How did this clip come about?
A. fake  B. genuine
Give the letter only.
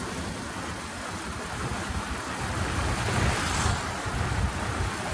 B